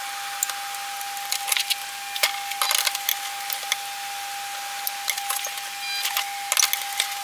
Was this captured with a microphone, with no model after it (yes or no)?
yes